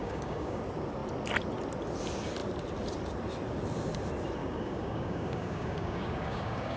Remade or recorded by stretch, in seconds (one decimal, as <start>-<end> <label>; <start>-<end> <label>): 0.0-0.6 remade; 0.6-4.4 recorded; 4.4-6.8 remade